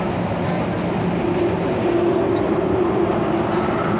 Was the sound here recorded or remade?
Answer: recorded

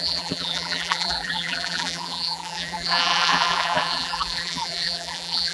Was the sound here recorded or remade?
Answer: remade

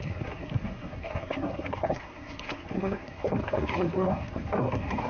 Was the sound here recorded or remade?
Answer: remade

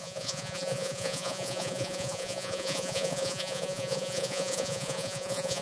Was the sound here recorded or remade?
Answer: remade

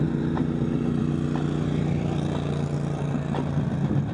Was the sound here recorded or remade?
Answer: recorded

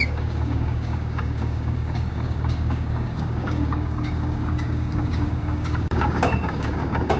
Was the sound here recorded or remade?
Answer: remade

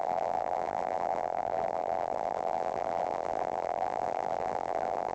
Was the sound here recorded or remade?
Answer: remade